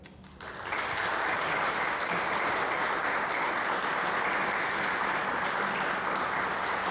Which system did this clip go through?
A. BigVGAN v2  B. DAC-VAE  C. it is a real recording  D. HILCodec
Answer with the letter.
C